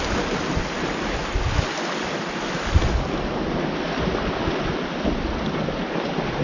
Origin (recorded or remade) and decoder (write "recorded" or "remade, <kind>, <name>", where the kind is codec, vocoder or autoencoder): recorded